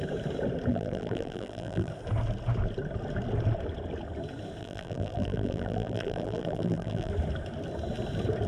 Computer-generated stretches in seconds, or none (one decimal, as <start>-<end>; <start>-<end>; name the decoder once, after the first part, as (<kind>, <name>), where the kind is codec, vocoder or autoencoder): 0.7-1.9 (vocoder, BigVGAN v2); 4.6-7.1